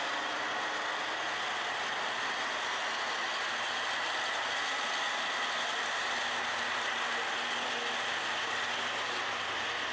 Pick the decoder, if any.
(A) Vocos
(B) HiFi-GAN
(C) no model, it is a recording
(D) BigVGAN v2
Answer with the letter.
C